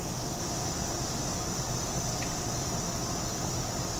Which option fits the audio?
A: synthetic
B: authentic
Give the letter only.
B